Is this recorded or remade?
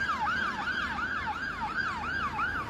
recorded